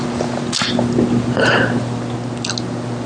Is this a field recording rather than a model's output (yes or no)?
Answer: yes